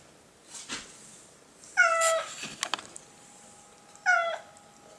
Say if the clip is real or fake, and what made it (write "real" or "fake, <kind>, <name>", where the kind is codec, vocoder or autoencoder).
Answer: real